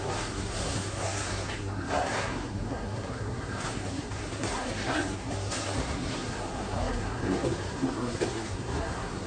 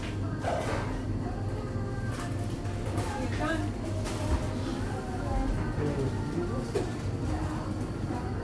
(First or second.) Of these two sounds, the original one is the second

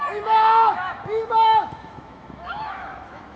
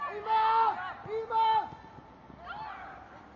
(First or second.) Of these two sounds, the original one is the second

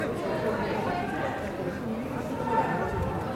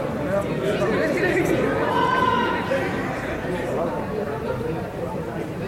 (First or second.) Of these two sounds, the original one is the first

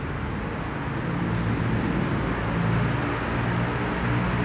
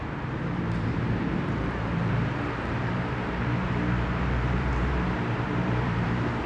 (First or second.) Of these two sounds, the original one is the first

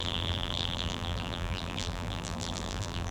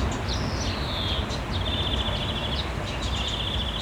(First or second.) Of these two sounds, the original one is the second